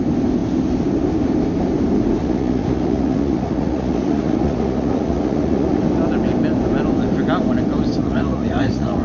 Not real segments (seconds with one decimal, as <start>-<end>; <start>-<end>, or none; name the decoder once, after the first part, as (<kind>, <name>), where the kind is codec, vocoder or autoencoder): 2.2-5.8 (vocoder, Vocos); 8.0-9.0